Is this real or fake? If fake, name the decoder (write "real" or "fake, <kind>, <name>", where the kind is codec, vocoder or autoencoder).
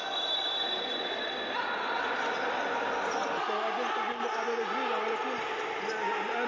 real